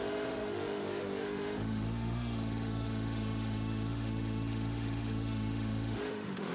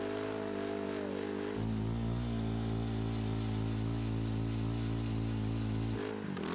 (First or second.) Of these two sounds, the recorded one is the second